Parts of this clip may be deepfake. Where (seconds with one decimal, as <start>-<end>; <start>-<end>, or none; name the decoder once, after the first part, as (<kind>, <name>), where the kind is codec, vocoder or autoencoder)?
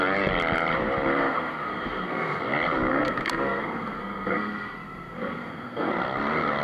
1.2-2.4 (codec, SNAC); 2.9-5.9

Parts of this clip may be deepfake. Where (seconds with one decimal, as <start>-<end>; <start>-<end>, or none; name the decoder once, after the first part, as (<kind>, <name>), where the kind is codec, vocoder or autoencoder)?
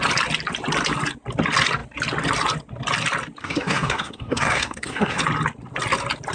3.4-5.2 (codec, SNAC)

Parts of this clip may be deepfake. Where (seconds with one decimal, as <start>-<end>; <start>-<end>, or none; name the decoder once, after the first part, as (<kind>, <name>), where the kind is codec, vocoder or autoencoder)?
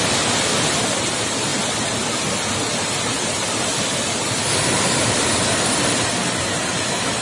none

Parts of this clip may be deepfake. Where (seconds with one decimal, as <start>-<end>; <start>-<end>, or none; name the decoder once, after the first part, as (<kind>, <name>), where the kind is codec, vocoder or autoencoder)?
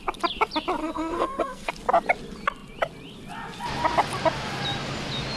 0.8-1.7 (codec, SNAC)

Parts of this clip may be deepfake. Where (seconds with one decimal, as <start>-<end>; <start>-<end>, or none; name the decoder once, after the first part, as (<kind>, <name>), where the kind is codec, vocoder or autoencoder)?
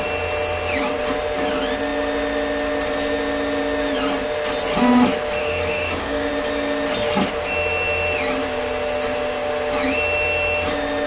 5.4-6.3 (codec, DAC)